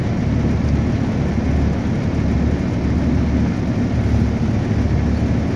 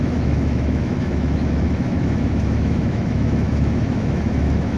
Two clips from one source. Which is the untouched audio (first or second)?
first